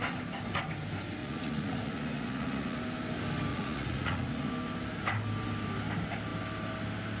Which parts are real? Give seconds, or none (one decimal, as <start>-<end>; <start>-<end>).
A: 0.0-1.2; 2.8-3.5; 4.5-7.2